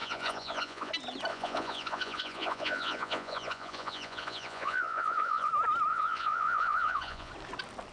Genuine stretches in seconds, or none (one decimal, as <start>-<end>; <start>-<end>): 0.9-1.3; 5.5-5.9; 7.3-7.9